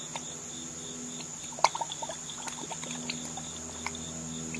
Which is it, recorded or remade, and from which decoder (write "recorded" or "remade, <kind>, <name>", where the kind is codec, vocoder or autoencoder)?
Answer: recorded